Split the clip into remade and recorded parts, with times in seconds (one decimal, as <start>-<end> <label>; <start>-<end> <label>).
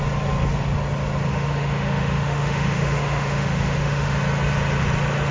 0.0-1.3 recorded; 1.3-4.2 remade; 4.2-5.3 recorded